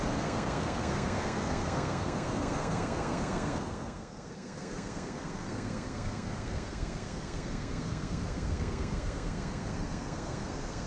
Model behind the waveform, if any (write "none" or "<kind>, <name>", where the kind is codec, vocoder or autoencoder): codec, SNAC